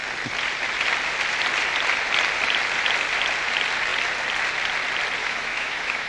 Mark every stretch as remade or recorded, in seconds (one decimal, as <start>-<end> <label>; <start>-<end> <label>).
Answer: 0.0-5.2 recorded; 5.2-6.1 remade